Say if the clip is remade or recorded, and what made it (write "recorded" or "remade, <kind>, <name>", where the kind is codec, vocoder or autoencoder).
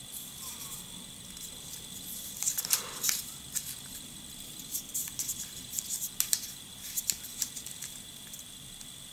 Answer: recorded